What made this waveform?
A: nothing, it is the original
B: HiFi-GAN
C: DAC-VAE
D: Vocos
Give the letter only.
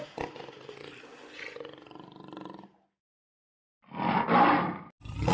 A